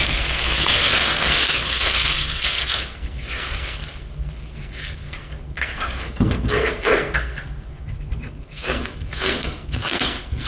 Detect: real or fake fake